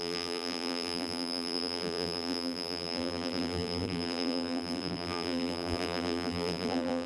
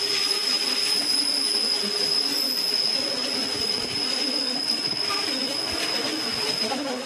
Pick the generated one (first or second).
first